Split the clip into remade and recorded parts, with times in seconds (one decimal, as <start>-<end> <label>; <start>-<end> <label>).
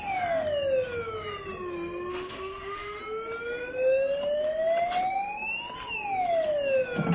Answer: 0.0-2.1 recorded; 2.1-3.0 remade; 3.0-7.1 recorded